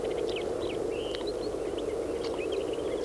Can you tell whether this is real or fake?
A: real